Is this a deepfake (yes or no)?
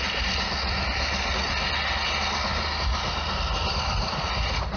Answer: no